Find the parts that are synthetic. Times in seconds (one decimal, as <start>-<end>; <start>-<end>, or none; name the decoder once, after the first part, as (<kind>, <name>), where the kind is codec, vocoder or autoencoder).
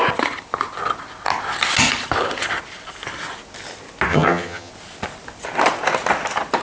4.1-4.7 (vocoder, HiFi-GAN)